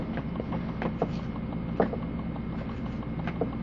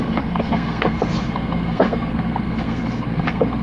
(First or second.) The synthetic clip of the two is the second